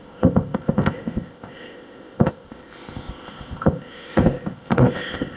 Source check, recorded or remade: remade